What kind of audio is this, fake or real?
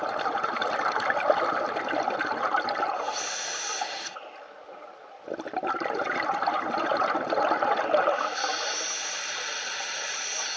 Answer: real